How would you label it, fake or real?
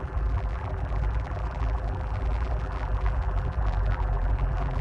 fake